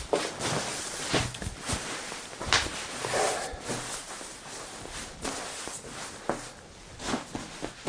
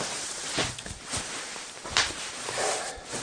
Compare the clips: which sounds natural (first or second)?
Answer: first